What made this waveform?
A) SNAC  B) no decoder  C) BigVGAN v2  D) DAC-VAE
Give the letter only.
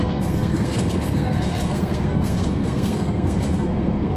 A